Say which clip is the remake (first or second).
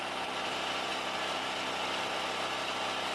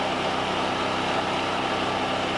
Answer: second